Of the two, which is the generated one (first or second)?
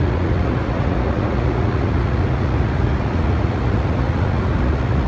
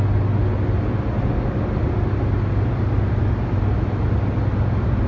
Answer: first